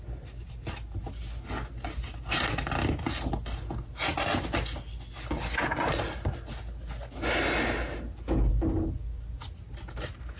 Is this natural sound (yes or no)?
yes